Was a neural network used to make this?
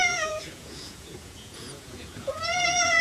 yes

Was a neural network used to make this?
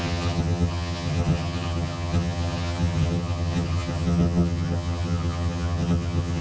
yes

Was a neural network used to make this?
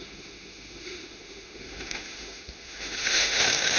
yes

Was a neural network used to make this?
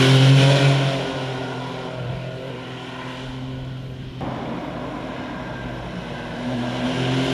no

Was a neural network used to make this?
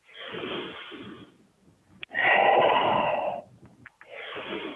no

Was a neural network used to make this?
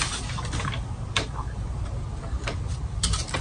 no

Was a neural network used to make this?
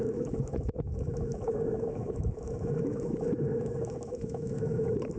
yes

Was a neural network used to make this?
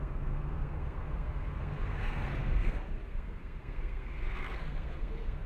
yes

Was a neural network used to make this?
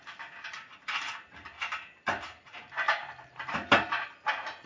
no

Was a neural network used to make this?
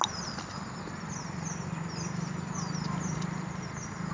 no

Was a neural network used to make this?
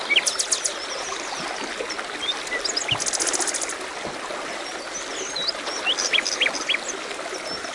no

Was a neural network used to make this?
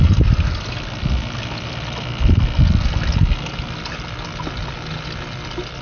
no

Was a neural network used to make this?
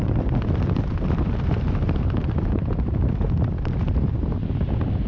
yes